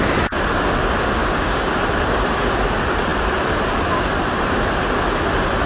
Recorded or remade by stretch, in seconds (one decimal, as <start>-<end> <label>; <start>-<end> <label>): 0.0-1.2 recorded; 1.2-1.8 remade; 1.8-5.7 recorded